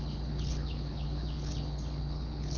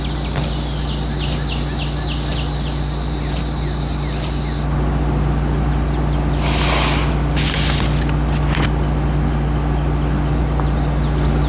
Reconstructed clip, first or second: first